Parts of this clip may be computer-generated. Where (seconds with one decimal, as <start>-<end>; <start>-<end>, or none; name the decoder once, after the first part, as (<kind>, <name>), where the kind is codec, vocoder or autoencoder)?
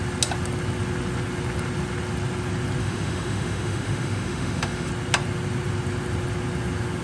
2.8-4.9 (autoencoder, DAC-VAE)